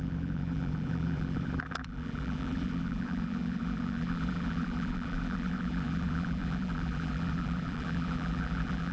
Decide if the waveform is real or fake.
fake